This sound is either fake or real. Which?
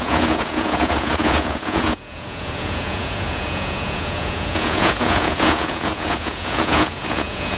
fake